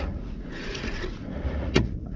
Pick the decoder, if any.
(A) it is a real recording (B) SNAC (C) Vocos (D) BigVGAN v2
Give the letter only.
C